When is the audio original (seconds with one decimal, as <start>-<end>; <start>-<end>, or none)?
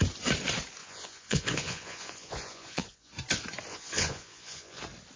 0.0-0.8; 3.1-3.7; 4.8-5.2